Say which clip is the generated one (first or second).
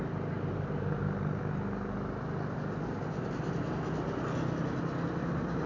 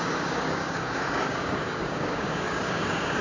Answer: second